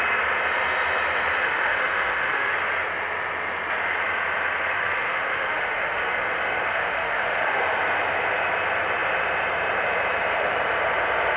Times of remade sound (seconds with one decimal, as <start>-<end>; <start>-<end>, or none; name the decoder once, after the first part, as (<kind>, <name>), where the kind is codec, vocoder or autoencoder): 1.4-2.5 (autoencoder, DAC-VAE); 4.7-7.6